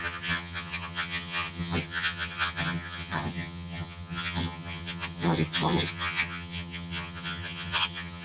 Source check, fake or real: fake